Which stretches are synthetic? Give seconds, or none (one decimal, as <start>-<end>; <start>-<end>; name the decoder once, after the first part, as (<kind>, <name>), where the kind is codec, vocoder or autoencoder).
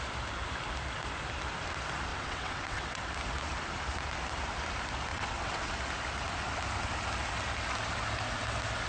2.1-3.1 (vocoder, WaveNeXt); 5.1-5.7